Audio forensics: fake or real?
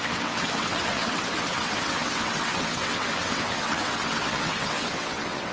fake